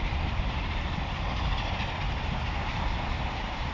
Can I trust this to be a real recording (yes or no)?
yes